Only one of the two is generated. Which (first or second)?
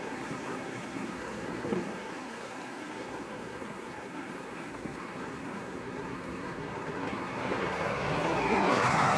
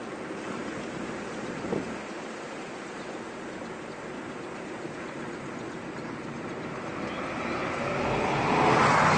first